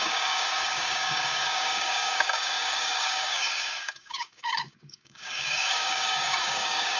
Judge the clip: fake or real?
fake